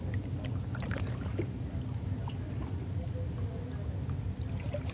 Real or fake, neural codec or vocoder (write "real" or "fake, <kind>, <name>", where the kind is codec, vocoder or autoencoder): real